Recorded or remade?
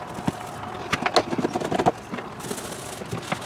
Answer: recorded